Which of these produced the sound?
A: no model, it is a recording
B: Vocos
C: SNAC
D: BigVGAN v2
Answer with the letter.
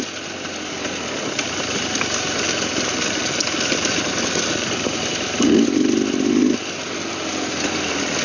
A